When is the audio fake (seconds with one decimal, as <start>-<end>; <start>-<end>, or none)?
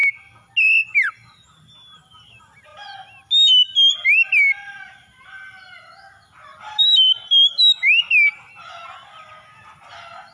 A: none